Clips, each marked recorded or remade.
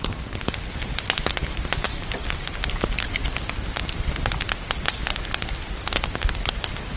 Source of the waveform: remade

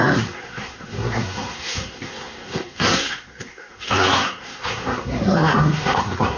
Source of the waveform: remade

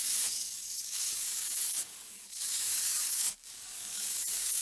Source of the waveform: remade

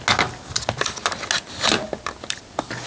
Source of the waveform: recorded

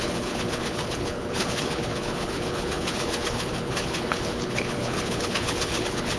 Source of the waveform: remade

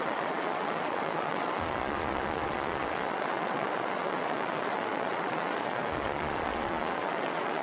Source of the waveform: remade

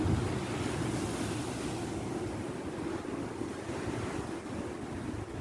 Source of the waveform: recorded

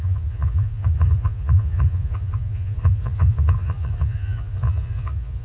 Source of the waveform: remade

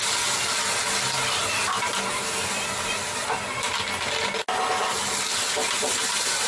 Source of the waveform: recorded